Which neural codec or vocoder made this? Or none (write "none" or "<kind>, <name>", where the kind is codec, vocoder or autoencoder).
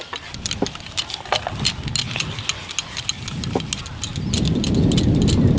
none